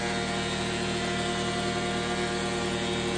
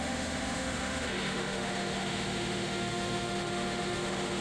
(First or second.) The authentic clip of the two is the first